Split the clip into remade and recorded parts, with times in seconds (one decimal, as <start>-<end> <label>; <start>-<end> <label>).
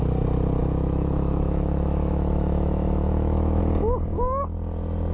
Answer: 0.0-0.6 recorded; 0.6-3.6 remade; 3.6-5.1 recorded